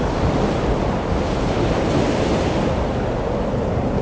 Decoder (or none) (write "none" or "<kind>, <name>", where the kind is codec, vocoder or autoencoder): none